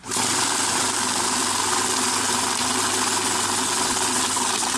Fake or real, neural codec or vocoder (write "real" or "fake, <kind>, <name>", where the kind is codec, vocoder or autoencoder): real